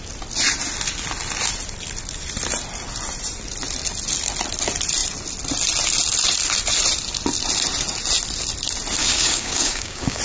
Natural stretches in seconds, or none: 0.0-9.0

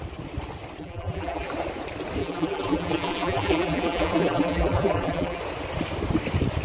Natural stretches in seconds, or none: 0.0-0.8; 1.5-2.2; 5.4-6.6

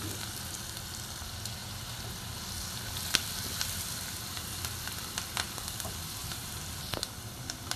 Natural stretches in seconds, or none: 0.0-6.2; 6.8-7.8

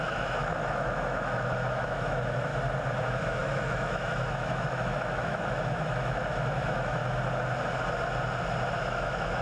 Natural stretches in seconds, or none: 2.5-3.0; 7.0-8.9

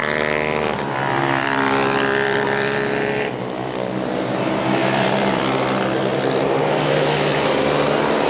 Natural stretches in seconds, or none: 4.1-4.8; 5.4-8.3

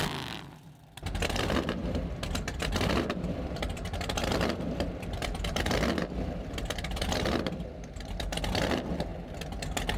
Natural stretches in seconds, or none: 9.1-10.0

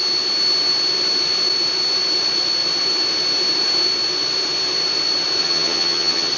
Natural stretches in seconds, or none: 0.0-5.4